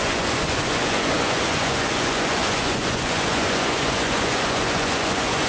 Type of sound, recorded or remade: remade